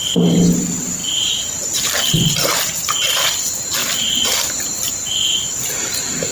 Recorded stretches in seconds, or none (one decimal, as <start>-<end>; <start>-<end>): 0.0-1.0; 2.0-3.8; 5.5-6.3